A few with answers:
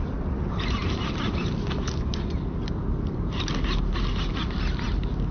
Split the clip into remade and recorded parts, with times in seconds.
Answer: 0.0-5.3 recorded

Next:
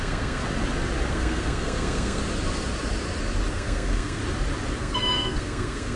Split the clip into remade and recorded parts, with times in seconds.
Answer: 0.0-0.4 remade; 0.4-1.1 recorded; 1.1-2.2 remade; 2.2-3.5 recorded; 3.5-4.2 remade; 4.2-4.8 recorded; 4.8-6.0 remade

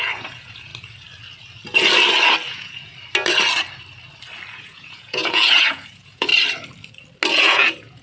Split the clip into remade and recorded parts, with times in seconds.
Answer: 0.0-0.7 remade; 0.7-2.5 recorded; 2.5-2.9 remade; 2.9-4.5 recorded; 4.5-6.3 remade; 6.3-7.3 recorded; 7.3-8.0 remade

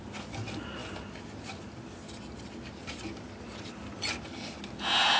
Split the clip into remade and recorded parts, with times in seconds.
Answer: 0.0-5.2 recorded

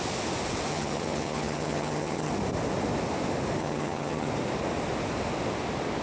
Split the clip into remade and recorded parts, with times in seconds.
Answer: 0.0-0.7 recorded; 0.7-2.3 remade; 2.3-3.6 recorded; 3.6-4.3 remade; 4.3-6.0 recorded